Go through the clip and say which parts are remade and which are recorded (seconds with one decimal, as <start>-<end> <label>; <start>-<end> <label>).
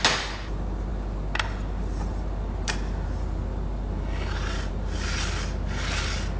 0.0-6.4 recorded